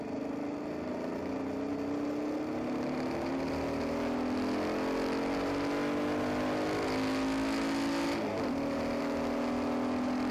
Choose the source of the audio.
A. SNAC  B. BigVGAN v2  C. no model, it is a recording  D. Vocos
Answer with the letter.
C